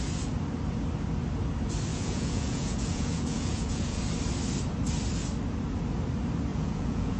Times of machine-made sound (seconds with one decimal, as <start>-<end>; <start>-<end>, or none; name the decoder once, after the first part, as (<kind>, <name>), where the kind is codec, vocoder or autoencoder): 1.9-4.0 (vocoder, Vocos); 6.5-7.2